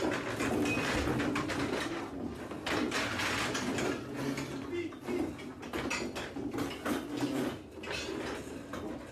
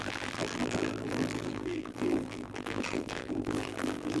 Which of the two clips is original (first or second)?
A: first